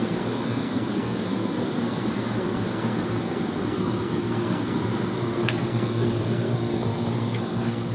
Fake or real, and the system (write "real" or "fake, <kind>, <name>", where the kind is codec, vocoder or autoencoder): fake, codec, SNAC